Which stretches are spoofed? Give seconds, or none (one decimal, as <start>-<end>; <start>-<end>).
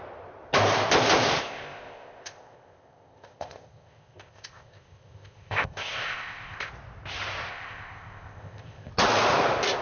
1.4-6.7; 7.5-8.9